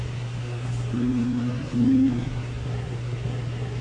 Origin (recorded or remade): remade